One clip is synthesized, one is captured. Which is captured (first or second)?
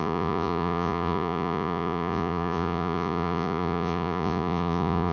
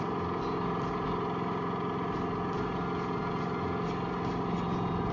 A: second